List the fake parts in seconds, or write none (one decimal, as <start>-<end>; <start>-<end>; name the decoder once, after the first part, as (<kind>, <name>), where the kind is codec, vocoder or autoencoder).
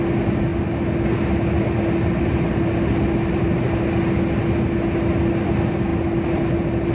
none